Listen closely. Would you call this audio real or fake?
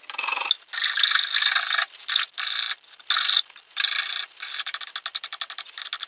real